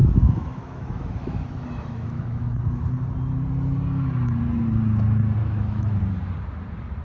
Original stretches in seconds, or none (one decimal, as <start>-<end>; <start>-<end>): 2.8-5.4; 6.0-7.0